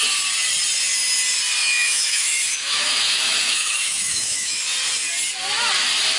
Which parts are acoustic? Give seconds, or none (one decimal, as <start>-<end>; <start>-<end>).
0.0-1.6; 4.6-6.2